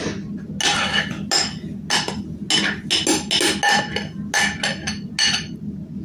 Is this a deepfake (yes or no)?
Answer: no